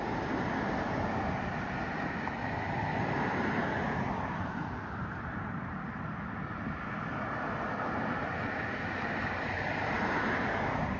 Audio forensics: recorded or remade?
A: recorded